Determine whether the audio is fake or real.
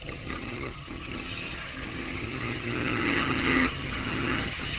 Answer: fake